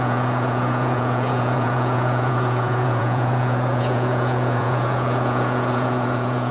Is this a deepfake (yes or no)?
yes